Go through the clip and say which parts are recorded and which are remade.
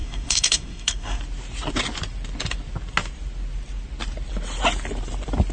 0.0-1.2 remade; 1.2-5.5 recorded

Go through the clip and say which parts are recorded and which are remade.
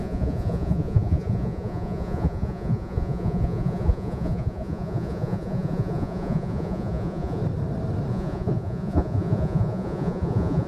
0.0-7.4 remade; 7.4-8.1 recorded; 8.1-10.7 remade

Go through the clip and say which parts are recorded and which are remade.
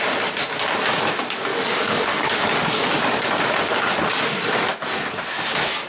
0.0-1.5 recorded; 1.5-3.4 remade; 3.4-5.9 recorded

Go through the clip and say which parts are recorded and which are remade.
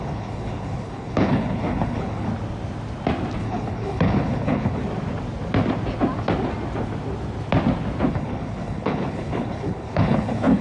0.0-2.3 remade; 2.3-3.4 recorded; 3.4-4.8 remade; 4.8-8.1 recorded; 8.1-10.6 remade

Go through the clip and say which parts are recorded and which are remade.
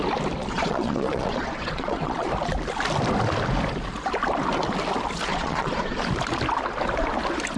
0.0-0.4 recorded; 0.4-2.3 remade; 2.3-5.3 recorded; 5.3-6.0 remade; 6.0-7.6 recorded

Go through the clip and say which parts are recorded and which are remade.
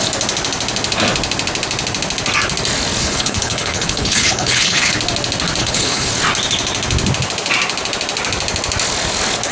0.0-3.0 recorded; 3.0-4.9 remade; 4.9-5.6 recorded; 5.6-6.1 remade; 6.1-9.5 recorded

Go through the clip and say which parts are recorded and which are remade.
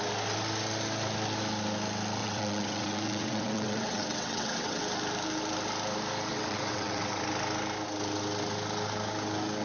0.0-2.2 recorded; 2.2-4.8 remade; 4.8-6.3 recorded; 6.3-7.2 remade; 7.2-9.6 recorded